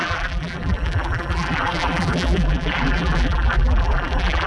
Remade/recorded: remade